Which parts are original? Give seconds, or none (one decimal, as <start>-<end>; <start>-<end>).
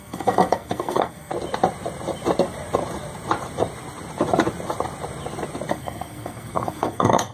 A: 1.3-5.7